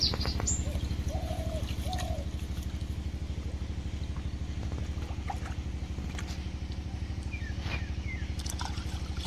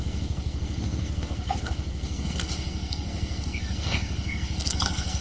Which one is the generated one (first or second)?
second